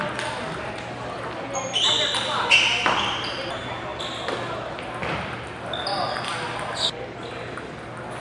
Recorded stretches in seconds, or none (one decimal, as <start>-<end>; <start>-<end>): 0.0-8.2